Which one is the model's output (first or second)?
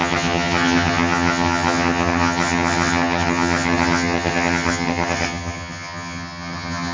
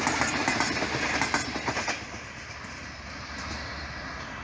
first